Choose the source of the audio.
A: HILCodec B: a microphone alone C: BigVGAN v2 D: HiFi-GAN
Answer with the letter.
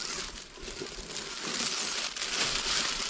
B